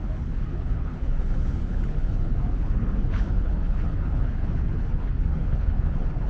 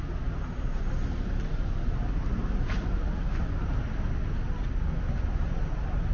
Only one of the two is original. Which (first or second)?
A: second